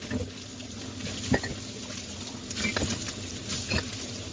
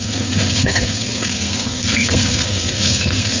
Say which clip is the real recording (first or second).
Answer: first